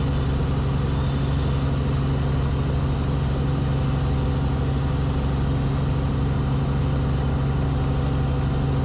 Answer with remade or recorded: recorded